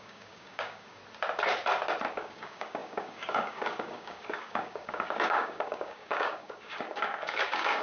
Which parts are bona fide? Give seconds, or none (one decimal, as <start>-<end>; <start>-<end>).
1.0-2.1